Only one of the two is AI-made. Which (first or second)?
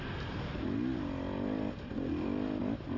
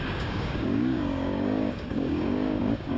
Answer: second